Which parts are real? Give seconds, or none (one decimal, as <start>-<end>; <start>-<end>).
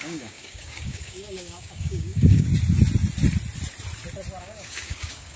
2.5-4.4